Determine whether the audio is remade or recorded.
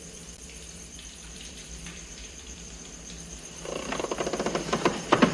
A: remade